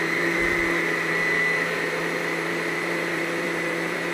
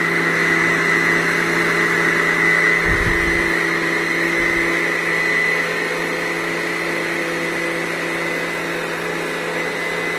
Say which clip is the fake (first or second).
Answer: first